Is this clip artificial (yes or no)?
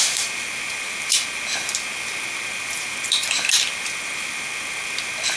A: yes